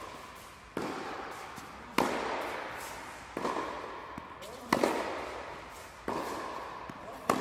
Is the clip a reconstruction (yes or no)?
no